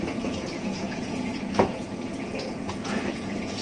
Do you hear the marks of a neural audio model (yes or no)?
yes